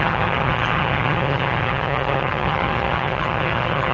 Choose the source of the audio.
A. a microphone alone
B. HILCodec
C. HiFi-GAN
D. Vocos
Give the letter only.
C